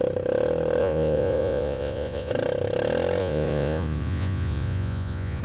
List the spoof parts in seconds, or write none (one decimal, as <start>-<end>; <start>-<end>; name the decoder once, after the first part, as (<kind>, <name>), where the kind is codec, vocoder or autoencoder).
0.8-2.3 (vocoder, Vocos); 3.2-5.4